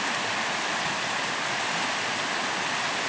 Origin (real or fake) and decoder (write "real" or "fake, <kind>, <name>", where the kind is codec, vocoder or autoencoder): real